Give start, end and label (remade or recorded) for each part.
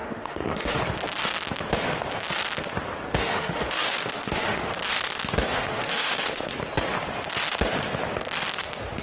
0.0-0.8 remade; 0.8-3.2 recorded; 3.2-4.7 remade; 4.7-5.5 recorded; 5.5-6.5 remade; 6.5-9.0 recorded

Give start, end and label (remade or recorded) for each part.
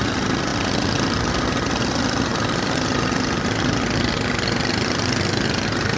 0.0-6.0 recorded